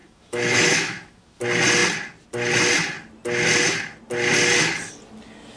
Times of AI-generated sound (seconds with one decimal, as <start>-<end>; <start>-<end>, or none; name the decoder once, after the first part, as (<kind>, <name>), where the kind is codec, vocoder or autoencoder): 0.0-1.4 (autoencoder, DAC-VAE)